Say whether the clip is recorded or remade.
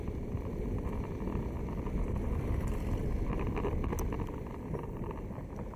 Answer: remade